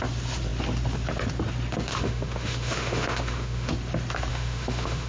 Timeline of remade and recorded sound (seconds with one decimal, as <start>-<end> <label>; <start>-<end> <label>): 0.0-1.9 recorded; 1.9-3.7 remade; 3.7-4.3 recorded; 4.3-5.1 remade